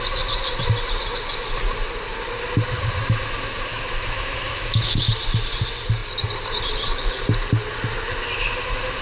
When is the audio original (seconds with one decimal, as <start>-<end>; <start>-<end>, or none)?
0.0-3.7; 5.0-9.0